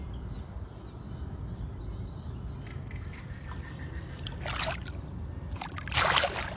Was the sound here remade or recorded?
recorded